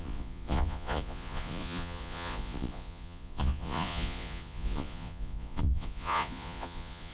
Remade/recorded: remade